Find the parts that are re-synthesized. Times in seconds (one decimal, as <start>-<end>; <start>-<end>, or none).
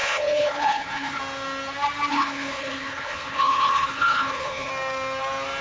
0.0-1.2; 2.1-4.7